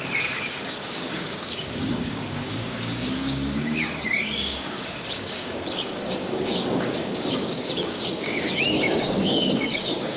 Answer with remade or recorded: remade